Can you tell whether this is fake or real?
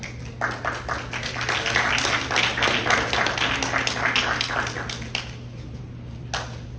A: real